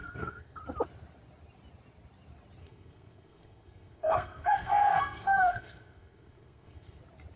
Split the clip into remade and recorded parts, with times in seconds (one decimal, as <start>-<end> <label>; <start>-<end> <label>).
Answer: 0.0-0.6 remade; 0.6-2.6 recorded; 2.6-7.0 remade; 7.0-7.4 recorded